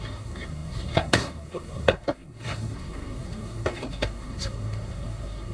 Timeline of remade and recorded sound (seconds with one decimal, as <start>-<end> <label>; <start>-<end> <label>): 0.0-5.5 remade